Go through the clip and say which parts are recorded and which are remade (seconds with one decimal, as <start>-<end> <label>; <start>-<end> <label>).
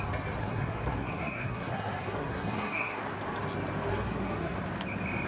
0.0-0.4 recorded; 0.4-3.0 remade; 3.0-3.9 recorded; 3.9-4.6 remade; 4.6-5.3 recorded